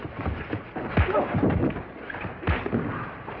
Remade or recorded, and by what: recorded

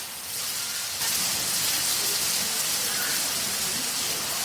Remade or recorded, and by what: recorded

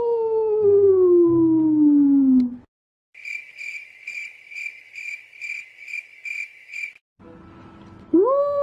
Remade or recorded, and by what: recorded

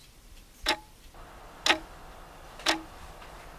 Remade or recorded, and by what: recorded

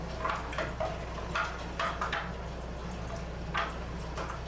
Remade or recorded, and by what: recorded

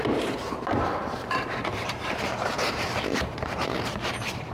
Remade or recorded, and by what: remade, vocoder, BigVGAN v2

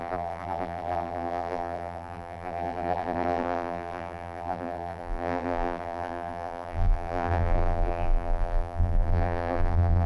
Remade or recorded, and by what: remade, vocoder, BigVGAN v2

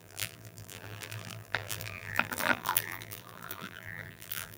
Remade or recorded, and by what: remade, vocoder, BigVGAN v2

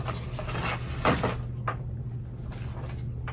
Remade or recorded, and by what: recorded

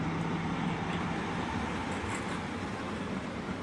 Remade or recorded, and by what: recorded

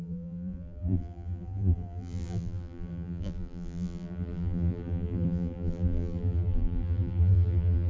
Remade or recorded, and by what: remade, vocoder, BigVGAN v2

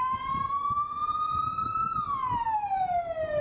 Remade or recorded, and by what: recorded